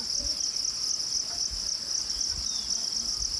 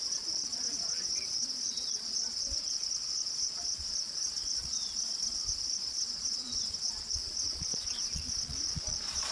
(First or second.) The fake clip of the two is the second